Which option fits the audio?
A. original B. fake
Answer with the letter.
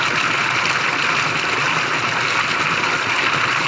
A